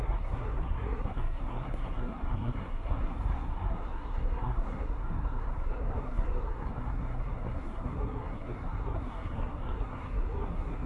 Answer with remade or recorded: remade